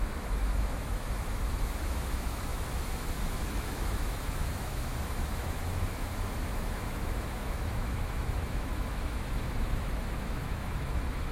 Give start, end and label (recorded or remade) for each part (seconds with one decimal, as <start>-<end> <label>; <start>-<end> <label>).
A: 0.0-11.3 remade